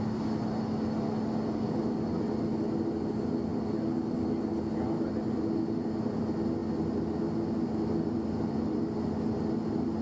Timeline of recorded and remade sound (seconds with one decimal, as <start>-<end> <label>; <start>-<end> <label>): 0.0-10.0 recorded